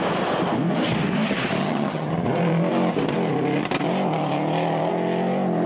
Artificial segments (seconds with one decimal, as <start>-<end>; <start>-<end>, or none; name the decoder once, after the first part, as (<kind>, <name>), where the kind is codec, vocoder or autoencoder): 1.6-2.1 (vocoder, HiFi-GAN)